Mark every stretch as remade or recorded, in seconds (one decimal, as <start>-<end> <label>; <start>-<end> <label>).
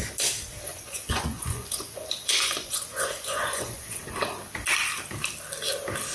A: 0.0-0.7 recorded; 0.7-4.0 remade; 4.0-6.1 recorded